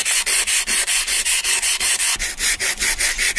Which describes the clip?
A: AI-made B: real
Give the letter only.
A